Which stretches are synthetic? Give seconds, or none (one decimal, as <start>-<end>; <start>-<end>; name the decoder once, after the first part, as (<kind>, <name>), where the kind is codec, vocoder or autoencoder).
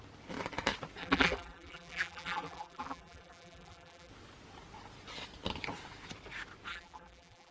1.0-4.1 (vocoder, BigVGAN v2); 6.7-7.5